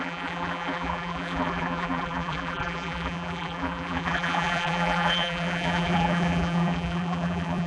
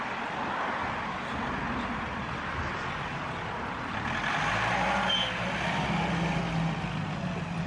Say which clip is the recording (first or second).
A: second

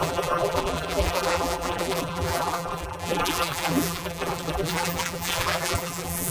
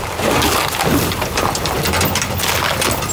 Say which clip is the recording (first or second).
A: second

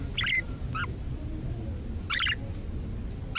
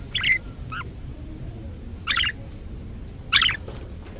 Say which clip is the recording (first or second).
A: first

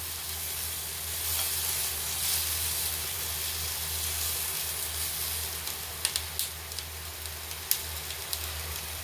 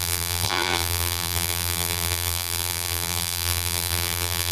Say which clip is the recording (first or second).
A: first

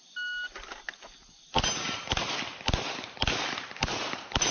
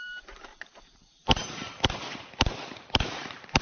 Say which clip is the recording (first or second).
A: first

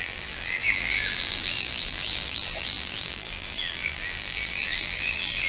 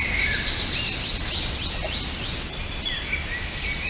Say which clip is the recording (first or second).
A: second